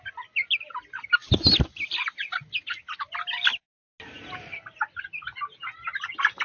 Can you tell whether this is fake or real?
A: real